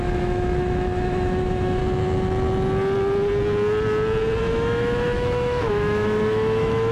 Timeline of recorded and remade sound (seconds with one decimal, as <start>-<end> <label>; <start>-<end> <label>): 0.0-1.8 remade; 1.8-4.4 recorded; 4.4-6.9 remade